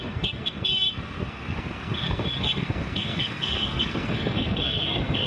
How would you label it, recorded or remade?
remade